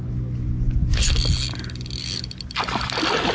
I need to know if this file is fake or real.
real